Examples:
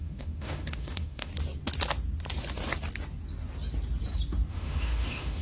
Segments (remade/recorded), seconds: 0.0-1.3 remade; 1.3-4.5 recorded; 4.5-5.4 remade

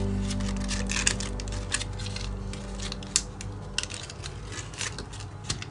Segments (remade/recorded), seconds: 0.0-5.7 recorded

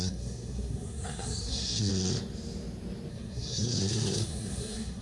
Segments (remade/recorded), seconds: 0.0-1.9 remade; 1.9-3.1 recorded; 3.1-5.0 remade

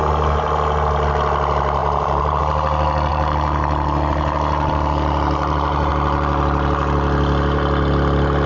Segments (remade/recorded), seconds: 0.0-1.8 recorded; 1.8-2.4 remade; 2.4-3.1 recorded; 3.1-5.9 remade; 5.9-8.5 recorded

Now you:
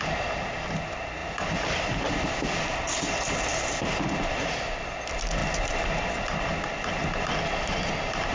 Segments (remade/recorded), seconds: 0.0-8.3 recorded

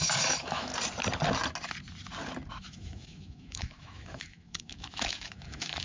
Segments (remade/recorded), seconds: 0.0-0.7 remade; 0.7-2.5 recorded; 2.5-5.8 remade

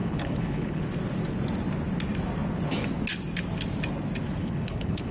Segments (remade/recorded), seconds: 0.0-0.8 remade; 0.8-4.4 recorded; 4.4-5.1 remade

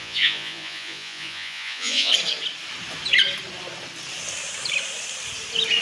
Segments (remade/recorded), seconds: 0.0-2.1 remade; 2.1-5.8 recorded